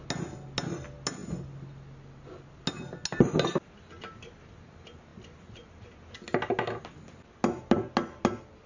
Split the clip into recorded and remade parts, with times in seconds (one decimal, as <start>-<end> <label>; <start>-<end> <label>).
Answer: 0.0-8.7 recorded